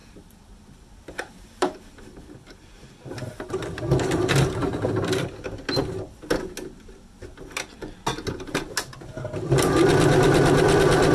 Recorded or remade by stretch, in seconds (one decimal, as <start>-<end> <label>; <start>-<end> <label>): 0.0-3.8 remade; 3.8-11.1 recorded